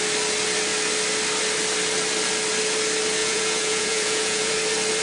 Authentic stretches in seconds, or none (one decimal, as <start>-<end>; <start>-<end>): 0.0-3.2; 4.5-5.0